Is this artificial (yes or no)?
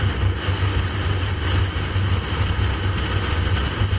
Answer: no